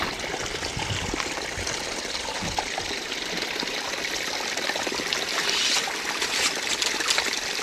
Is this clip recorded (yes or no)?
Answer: yes